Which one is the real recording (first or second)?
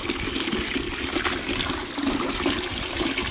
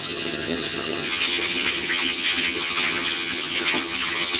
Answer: first